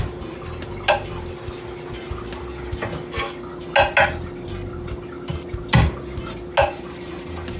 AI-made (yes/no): no